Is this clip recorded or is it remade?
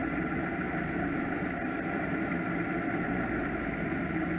recorded